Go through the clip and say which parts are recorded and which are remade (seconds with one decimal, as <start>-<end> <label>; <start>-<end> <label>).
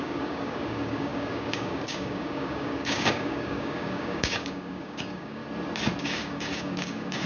0.0-5.4 remade; 5.4-6.0 recorded; 6.0-7.3 remade